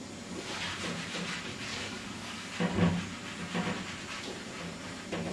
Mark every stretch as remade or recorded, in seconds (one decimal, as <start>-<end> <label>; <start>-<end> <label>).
0.0-1.7 recorded; 1.7-2.9 remade; 2.9-5.3 recorded